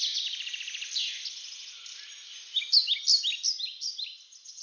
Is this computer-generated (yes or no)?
no